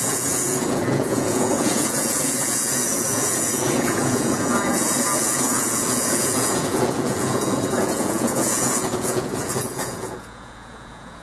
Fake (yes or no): yes